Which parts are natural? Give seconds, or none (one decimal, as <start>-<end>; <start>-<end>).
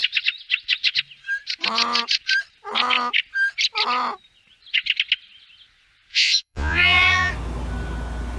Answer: 0.0-6.1; 7.3-8.4